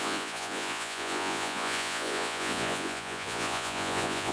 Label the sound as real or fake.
fake